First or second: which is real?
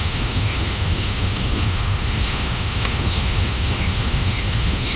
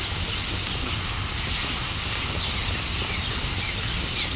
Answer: second